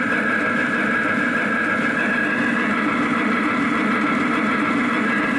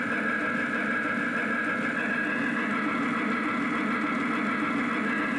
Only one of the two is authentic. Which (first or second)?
second